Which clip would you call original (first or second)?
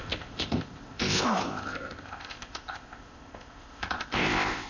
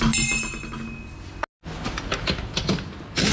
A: second